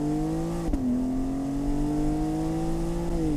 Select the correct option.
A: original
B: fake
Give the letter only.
A